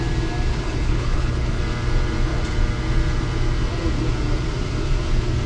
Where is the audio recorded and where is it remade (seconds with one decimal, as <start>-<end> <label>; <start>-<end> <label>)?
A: 0.0-0.5 recorded; 0.5-1.6 remade; 1.6-5.5 recorded